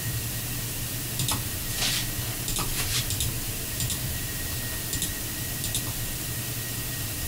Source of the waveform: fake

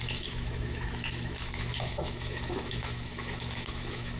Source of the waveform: fake